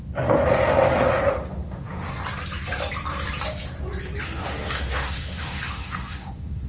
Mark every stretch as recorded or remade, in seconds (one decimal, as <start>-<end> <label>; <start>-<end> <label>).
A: 0.0-1.3 recorded; 1.3-2.1 remade; 2.1-4.2 recorded; 4.2-6.7 remade